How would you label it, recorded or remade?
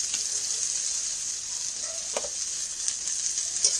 recorded